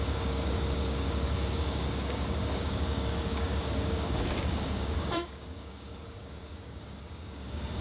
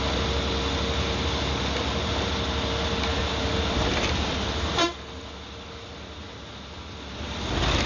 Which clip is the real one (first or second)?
second